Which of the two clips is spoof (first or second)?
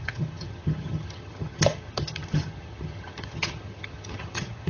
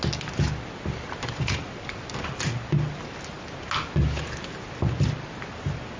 first